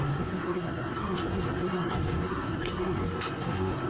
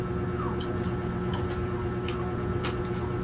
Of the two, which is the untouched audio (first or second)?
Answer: second